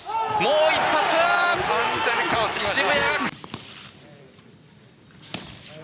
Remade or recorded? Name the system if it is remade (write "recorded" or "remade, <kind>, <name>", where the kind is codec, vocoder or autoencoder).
recorded